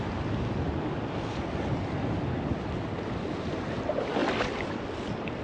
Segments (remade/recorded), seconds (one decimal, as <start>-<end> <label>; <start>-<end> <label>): 0.0-5.4 recorded